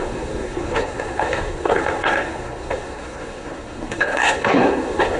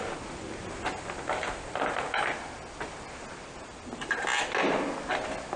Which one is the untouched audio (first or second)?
second